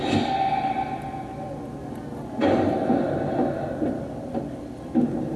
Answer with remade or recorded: recorded